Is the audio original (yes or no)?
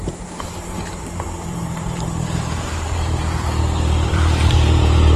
no